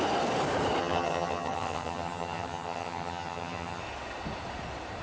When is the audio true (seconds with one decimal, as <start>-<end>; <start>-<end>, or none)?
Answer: 0.0-0.8; 3.8-5.0